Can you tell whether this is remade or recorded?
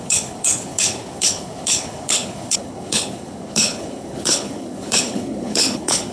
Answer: remade